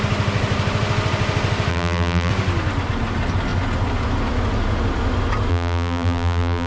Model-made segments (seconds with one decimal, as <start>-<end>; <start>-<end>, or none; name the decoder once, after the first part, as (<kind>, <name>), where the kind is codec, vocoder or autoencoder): 1.7-2.3 (vocoder, BigVGAN v2); 5.5-6.7